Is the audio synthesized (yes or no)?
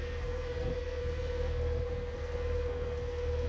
yes